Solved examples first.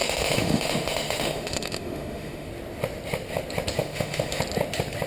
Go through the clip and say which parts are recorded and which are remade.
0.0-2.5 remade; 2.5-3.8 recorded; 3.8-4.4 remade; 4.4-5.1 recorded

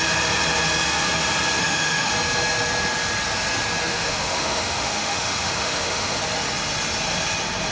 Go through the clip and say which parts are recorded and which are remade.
0.0-1.6 recorded; 1.6-2.1 remade; 2.1-3.9 recorded; 3.9-6.2 remade; 6.2-7.7 recorded

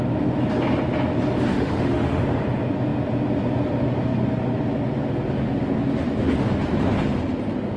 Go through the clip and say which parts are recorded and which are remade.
0.0-1.5 recorded; 1.5-2.2 remade; 2.2-7.8 recorded

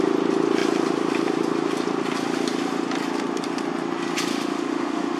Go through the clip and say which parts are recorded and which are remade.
0.0-4.3 recorded; 4.3-5.2 remade

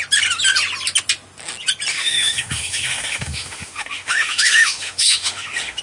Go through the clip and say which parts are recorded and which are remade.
0.0-1.9 recorded; 1.9-5.8 remade